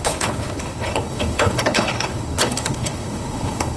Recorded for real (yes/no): no